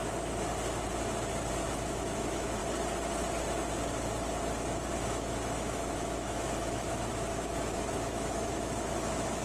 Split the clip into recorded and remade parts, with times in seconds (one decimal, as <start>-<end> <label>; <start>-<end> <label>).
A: 0.0-1.5 recorded; 1.5-2.6 remade; 2.6-4.9 recorded; 4.9-9.4 remade